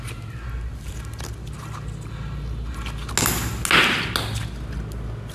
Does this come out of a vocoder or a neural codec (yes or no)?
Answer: no